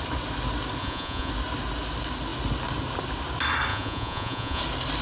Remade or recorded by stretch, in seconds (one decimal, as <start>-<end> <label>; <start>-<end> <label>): 0.0-0.8 recorded; 0.8-1.3 remade; 1.3-3.7 recorded; 3.7-4.6 remade; 4.6-5.0 recorded